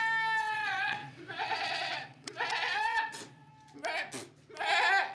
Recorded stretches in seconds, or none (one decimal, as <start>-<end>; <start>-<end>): 0.0-0.4; 3.5-5.1